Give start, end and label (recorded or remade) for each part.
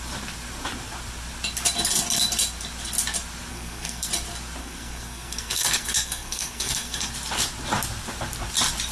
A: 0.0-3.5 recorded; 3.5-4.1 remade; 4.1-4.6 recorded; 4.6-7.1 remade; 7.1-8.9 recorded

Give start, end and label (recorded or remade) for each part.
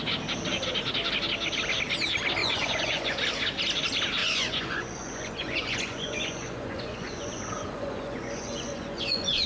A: 0.0-2.4 recorded; 2.4-3.2 remade; 3.2-4.2 recorded; 4.2-9.5 remade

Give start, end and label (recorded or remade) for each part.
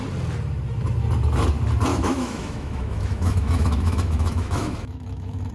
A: 0.0-1.9 recorded; 1.9-5.5 remade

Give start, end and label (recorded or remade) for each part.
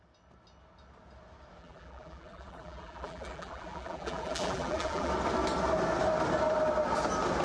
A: 0.0-1.6 recorded; 1.6-5.1 remade; 5.1-7.4 recorded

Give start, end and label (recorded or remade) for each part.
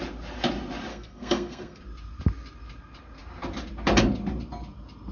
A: 0.0-0.9 recorded; 0.9-1.8 remade; 1.8-5.1 recorded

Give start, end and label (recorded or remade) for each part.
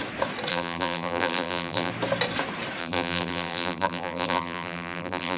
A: 0.0-0.5 recorded; 0.5-1.9 remade; 1.9-2.8 recorded; 2.8-5.4 remade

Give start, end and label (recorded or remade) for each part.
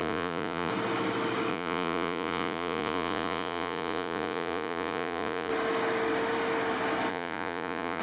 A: 0.0-0.7 remade; 0.7-1.5 recorded; 1.5-5.5 remade; 5.5-7.1 recorded; 7.1-8.0 remade